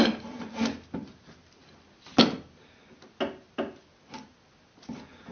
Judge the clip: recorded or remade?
recorded